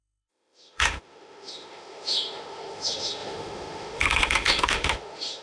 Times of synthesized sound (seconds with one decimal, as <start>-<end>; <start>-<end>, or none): 0.0-5.4

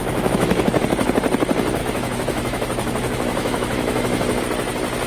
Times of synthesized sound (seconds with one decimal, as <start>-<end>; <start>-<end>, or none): 0.0-0.8; 1.8-4.4